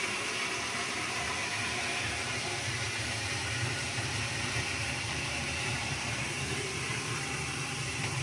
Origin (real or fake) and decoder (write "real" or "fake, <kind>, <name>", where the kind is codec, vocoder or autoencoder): fake, vocoder, BigVGAN v2